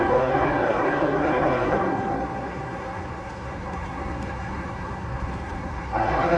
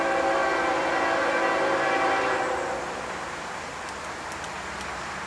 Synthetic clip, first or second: first